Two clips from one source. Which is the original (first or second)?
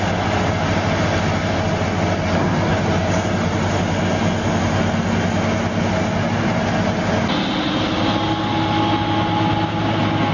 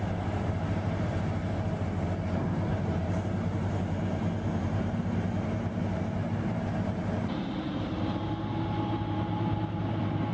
first